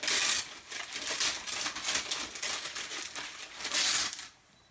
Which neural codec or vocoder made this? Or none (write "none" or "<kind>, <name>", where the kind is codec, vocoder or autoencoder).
none